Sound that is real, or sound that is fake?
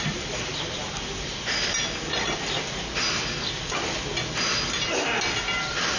real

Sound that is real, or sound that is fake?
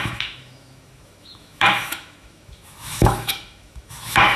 fake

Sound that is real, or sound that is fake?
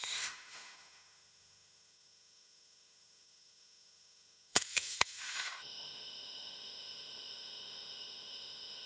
fake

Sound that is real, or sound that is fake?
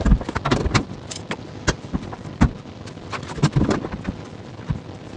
real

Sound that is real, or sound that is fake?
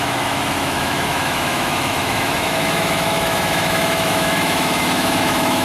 fake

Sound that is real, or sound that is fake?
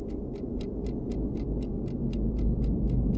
real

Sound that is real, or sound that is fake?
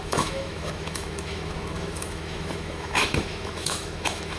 fake